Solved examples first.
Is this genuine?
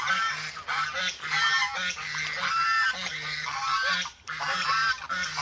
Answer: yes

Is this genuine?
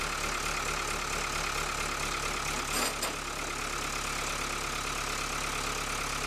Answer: yes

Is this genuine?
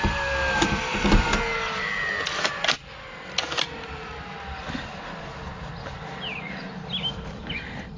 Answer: yes